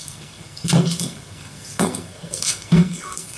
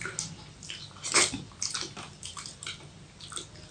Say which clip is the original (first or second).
second